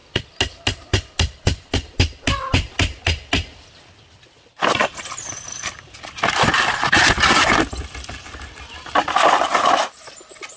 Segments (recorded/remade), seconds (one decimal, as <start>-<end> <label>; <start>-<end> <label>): 0.0-10.6 recorded